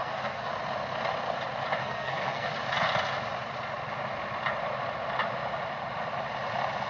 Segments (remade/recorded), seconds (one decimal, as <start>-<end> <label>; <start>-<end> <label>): 0.0-0.5 remade; 0.5-1.8 recorded; 1.8-2.5 remade; 2.5-6.9 recorded